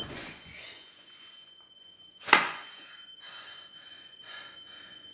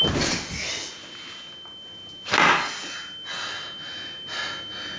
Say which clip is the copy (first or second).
first